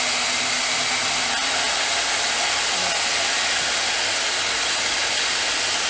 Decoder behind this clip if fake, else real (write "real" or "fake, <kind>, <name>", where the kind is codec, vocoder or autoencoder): real